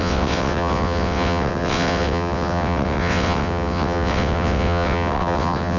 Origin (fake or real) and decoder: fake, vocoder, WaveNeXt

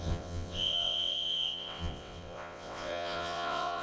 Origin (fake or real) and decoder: fake, vocoder, WaveNeXt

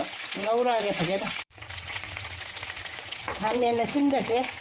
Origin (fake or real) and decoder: fake, vocoder, WaveNeXt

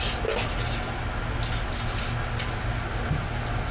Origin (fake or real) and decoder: real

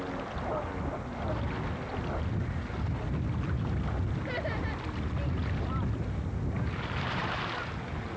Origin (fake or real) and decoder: real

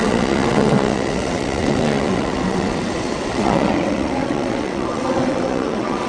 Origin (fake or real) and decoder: fake, vocoder, WaveNeXt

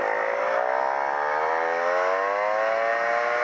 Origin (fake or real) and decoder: real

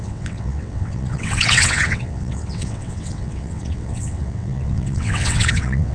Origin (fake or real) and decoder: fake, vocoder, WaveNeXt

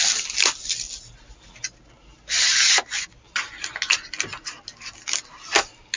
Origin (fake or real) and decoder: real